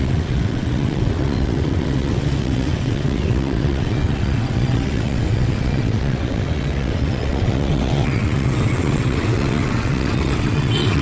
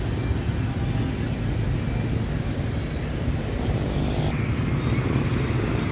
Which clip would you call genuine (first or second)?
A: second